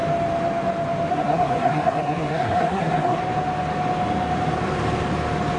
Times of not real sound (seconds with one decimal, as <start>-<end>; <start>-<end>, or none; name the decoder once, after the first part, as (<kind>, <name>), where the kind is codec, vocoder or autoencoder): 1.1-3.2 (codec, SNAC)